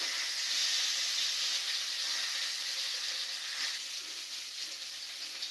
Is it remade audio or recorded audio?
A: recorded